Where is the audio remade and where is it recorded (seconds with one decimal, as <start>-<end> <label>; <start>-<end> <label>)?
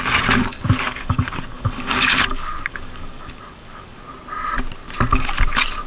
0.0-0.5 recorded; 0.5-4.0 remade; 4.0-5.9 recorded